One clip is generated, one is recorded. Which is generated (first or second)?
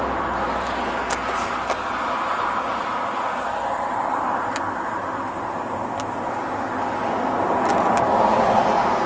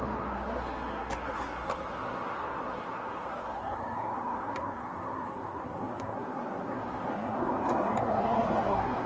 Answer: second